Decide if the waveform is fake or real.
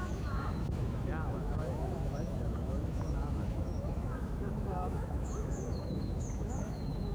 fake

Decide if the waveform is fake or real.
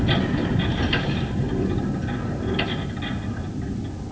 real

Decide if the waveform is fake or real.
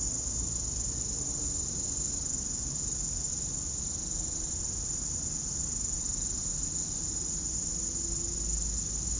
real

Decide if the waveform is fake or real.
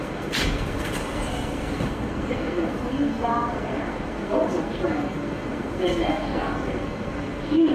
fake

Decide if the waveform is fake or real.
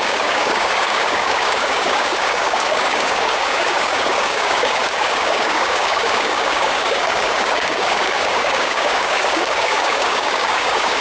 fake